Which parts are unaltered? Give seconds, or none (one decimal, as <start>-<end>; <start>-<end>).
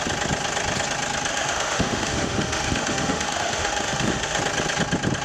0.0-1.3; 4.4-5.2